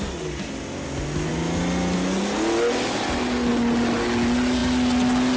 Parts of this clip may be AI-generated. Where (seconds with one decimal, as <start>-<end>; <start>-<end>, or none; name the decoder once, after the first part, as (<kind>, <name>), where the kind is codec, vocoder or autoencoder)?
none